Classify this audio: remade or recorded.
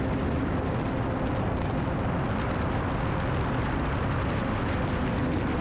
recorded